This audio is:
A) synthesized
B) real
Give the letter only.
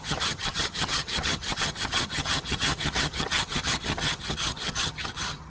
A